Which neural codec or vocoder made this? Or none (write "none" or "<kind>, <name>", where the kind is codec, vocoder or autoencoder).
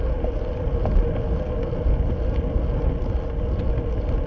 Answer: none